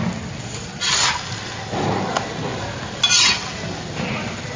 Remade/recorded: recorded